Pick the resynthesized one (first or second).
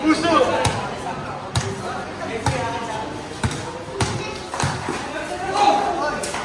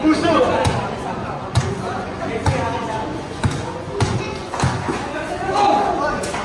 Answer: second